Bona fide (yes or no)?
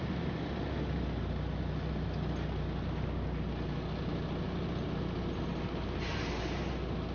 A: yes